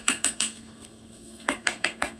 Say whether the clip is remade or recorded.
remade